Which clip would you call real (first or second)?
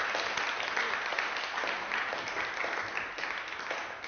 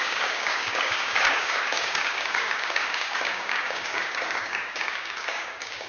first